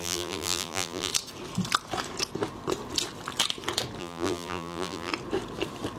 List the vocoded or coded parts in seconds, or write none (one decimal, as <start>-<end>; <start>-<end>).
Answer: 0.0-1.1; 4.0-5.1

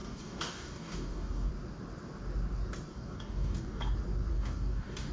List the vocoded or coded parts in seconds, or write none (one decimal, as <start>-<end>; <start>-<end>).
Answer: 0.0-1.5; 2.9-3.8; 4.3-5.1

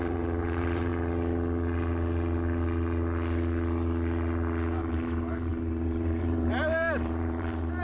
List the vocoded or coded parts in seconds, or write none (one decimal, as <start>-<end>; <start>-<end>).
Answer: 0.0-0.9; 4.8-7.8

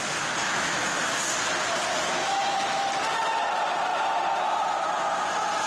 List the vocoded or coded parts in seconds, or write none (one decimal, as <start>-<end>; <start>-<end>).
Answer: 0.4-1.0; 2.2-2.9

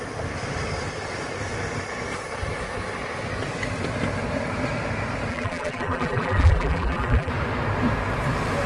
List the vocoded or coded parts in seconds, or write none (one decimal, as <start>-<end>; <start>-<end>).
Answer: 5.3-7.3

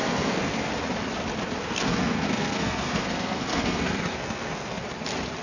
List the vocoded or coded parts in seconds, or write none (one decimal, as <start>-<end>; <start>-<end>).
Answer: 0.0-0.7; 1.6-4.8